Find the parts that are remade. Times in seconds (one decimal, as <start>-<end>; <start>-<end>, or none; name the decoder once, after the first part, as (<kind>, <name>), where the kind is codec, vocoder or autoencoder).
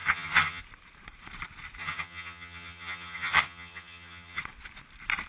0.0-0.6 (vocoder, HiFi-GAN); 1.8-4.4